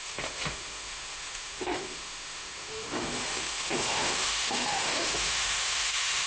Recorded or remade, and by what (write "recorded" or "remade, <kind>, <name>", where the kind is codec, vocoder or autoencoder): remade, autoencoder, DAC-VAE